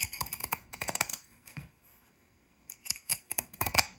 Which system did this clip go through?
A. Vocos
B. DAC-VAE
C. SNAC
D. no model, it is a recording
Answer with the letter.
C